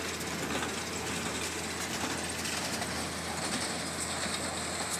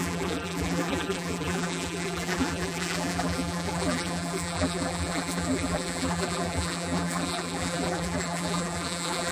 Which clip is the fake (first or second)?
second